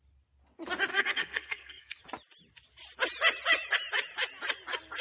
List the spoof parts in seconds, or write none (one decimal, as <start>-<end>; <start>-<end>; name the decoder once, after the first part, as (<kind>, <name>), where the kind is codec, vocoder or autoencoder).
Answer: 0.9-2.0 (codec, SNAC)

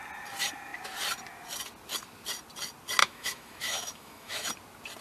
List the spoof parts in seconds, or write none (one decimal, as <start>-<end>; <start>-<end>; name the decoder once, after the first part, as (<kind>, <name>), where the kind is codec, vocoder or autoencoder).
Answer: 3.0-4.5 (autoencoder, DAC-VAE)

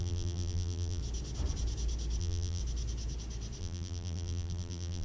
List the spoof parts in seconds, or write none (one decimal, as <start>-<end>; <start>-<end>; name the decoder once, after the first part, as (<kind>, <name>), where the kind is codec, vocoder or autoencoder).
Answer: 0.0-1.0 (vocoder, BigVGAN v2); 2.2-2.6; 3.6-5.0

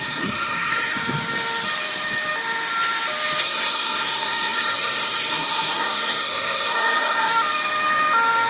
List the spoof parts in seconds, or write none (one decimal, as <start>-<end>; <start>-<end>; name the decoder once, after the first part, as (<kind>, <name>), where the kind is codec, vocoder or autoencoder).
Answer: 0.0-0.9 (codec, SNAC); 3.4-7.3

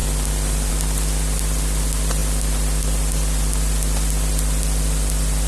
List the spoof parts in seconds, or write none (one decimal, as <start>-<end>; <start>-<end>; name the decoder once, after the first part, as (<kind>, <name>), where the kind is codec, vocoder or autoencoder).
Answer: none

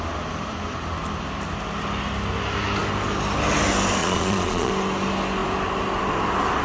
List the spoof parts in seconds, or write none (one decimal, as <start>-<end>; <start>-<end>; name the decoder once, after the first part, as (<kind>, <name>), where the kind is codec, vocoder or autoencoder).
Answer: 4.0-4.7 (vocoder, Vocos)

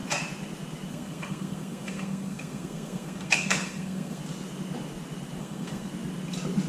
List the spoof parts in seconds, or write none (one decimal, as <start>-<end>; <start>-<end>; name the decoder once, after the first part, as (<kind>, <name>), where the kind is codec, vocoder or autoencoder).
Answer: 0.9-4.2 (codec, SNAC); 5.4-5.9

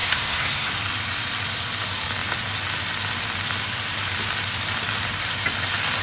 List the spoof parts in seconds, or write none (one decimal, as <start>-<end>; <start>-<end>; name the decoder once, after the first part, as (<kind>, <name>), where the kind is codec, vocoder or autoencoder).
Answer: 0.0-0.7 (codec, SNAC)